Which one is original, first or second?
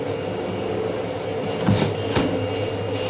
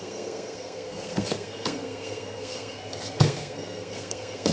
first